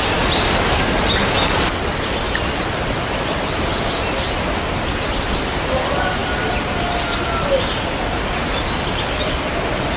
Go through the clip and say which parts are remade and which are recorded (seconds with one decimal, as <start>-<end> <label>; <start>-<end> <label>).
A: 0.0-10.0 recorded

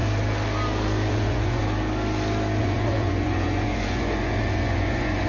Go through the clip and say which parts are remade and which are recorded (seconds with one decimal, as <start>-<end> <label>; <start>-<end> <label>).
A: 0.0-1.1 recorded; 1.1-1.6 remade; 1.6-2.6 recorded; 2.6-5.3 remade

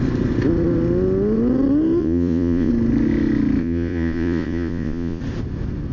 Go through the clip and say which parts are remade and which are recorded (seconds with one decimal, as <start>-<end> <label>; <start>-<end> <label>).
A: 0.0-2.0 recorded; 2.0-2.7 remade; 2.7-3.6 recorded; 3.6-5.2 remade; 5.2-5.9 recorded